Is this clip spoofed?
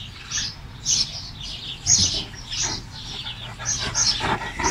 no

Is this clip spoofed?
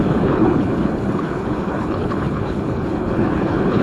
yes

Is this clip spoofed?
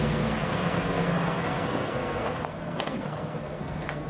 yes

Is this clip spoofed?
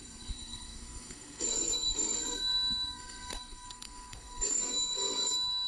yes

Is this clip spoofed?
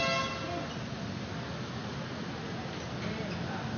no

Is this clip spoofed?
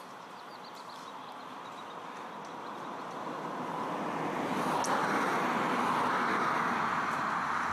no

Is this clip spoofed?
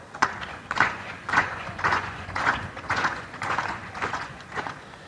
yes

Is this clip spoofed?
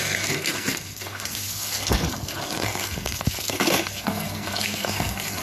yes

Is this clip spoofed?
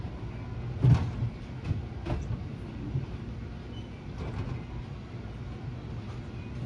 no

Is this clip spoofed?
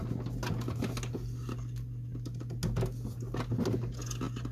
no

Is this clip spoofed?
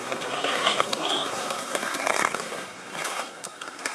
yes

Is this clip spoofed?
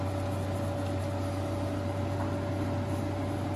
no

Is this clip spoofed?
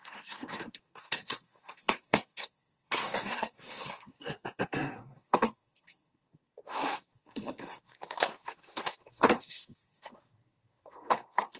yes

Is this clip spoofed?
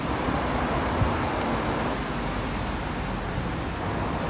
no